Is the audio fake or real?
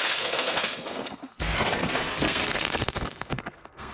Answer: fake